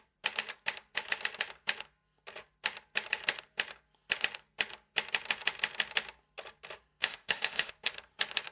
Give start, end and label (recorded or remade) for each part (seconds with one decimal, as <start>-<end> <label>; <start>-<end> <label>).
0.0-7.0 recorded; 7.0-7.7 remade; 7.7-8.5 recorded